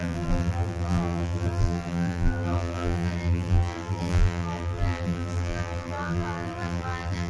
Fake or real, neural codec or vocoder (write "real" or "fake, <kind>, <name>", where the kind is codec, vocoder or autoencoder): fake, vocoder, BigVGAN v2